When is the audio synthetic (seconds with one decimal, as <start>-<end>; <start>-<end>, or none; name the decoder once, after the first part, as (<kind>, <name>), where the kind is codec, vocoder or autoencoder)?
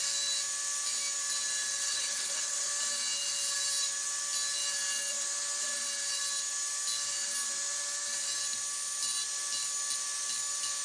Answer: 1.9-2.7 (codec, HILCodec)